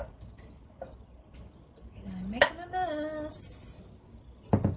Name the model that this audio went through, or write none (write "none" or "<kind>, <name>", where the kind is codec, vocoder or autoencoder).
none